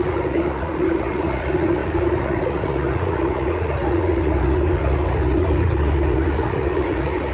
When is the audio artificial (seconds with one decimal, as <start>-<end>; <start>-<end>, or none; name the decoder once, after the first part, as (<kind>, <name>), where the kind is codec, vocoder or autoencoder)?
0.0-7.3 (vocoder, Vocos)